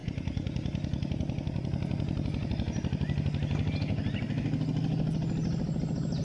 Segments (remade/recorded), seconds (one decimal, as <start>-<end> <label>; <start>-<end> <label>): 0.0-6.2 recorded